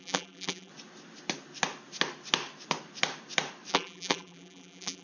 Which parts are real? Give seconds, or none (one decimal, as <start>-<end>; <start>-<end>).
0.7-3.7